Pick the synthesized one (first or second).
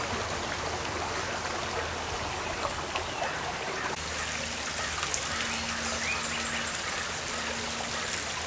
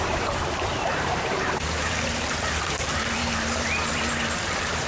second